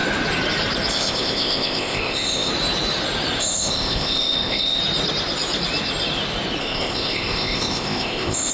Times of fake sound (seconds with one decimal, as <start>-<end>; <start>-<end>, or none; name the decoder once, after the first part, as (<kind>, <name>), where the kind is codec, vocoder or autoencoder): 0.9-2.5 (codec, ZipCodec); 3.4-4.8; 6.6-8.5